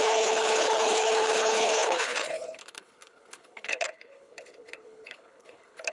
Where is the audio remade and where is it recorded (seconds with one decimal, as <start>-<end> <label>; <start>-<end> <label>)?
0.0-5.9 remade